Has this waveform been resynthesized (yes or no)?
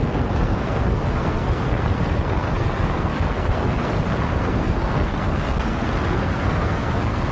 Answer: yes